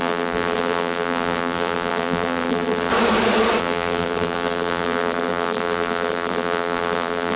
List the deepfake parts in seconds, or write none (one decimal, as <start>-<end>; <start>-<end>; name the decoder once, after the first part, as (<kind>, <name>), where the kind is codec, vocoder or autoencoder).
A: 0.0-2.9 (vocoder, BigVGAN v2); 3.6-7.4